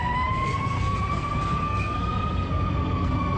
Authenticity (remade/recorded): remade